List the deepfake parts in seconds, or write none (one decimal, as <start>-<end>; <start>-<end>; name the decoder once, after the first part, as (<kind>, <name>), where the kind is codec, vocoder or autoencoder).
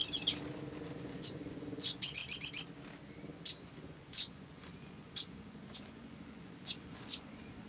1.0-2.2 (vocoder, Vocos); 3.6-7.7